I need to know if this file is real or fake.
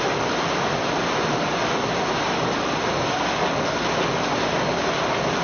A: real